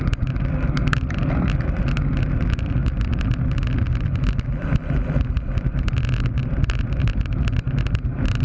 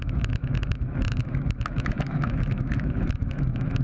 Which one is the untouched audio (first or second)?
first